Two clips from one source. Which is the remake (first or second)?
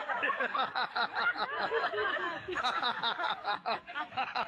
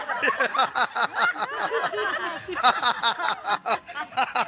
first